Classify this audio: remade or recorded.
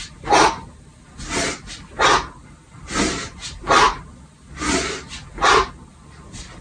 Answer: recorded